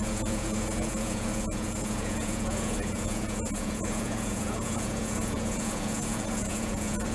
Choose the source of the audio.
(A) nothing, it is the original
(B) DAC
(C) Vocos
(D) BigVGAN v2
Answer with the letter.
C